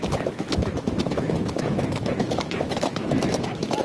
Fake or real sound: fake